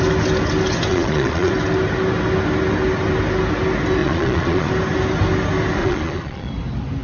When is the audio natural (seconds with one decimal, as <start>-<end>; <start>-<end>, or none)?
0.0-0.9; 1.5-4.0; 4.7-5.8; 6.5-7.0